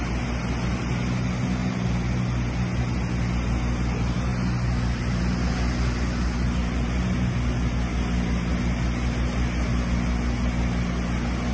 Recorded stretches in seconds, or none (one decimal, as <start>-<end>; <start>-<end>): 0.0-11.5